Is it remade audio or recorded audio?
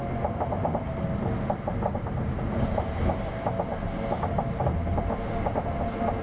recorded